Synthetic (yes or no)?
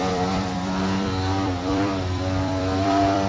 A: yes